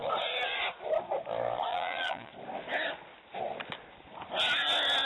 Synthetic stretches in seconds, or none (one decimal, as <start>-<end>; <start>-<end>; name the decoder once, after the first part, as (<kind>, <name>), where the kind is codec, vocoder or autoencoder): 1.7-2.3 (vocoder, Vocos)